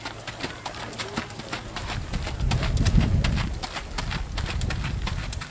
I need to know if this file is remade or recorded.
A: recorded